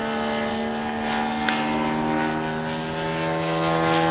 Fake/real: real